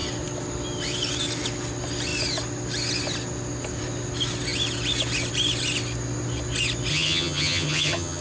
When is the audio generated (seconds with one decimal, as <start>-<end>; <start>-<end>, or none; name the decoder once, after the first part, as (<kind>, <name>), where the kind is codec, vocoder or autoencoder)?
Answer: 6.9-8.2 (vocoder, HiFi-GAN)